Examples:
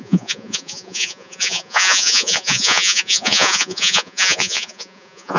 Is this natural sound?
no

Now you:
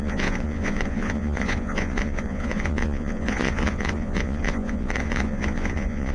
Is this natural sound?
no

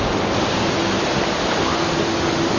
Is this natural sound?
yes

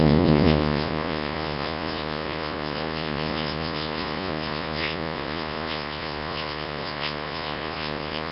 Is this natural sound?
no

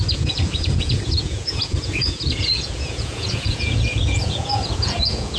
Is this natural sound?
no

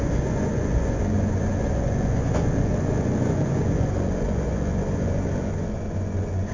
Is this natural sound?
no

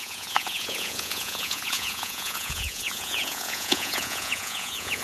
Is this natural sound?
no